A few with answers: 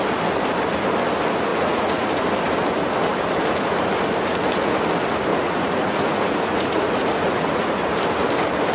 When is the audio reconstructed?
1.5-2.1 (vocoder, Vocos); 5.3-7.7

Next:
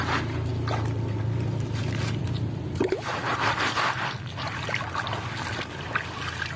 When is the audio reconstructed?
none

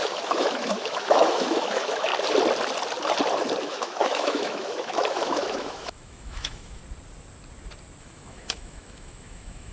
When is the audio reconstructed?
0.0-2.1 (autoencoder, DAC-VAE); 3.6-6.8; 8.0-9.7

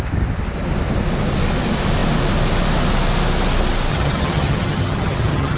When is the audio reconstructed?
3.9-5.6 (vocoder, HiFi-GAN)

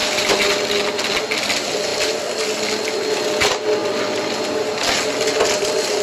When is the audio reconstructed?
none

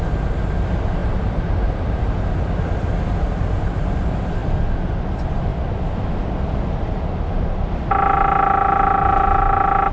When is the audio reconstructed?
1.0-2.0 (vocoder, BigVGAN v2)